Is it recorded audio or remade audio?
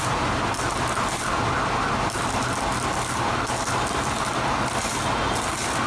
recorded